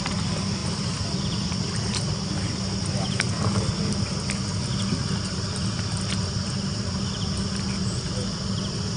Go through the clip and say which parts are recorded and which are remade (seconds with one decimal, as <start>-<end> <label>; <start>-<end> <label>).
0.0-9.0 recorded